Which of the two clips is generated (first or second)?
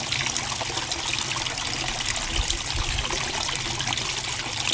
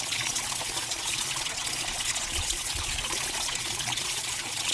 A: second